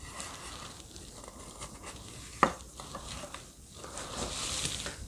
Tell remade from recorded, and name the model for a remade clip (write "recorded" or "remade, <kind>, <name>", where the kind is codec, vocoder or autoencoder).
recorded